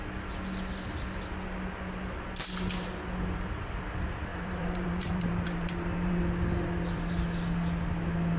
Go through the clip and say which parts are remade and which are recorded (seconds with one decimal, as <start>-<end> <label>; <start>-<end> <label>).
0.0-4.3 recorded; 4.3-6.2 remade; 6.2-8.4 recorded